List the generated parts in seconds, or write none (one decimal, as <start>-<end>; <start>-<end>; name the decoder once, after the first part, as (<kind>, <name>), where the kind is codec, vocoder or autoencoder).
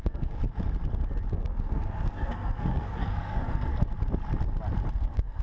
0.0-0.4 (codec, SNAC); 1.3-3.7; 4.9-5.4